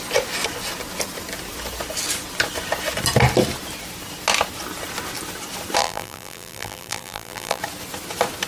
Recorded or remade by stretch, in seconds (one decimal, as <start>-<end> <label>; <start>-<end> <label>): 0.0-5.8 recorded; 5.8-7.6 remade; 7.6-8.5 recorded